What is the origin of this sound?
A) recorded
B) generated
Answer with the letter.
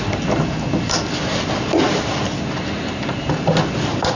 A